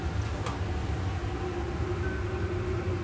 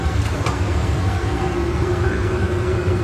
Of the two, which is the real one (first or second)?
first